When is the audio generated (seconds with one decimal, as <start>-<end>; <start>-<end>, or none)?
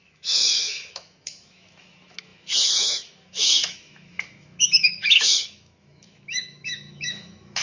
0.0-7.6